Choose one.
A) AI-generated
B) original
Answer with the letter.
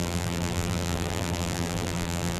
A